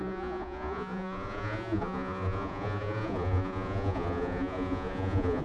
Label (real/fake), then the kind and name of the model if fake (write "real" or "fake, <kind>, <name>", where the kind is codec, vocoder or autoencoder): fake, vocoder, Vocos